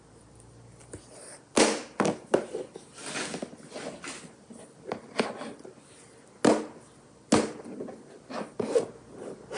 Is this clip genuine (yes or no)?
yes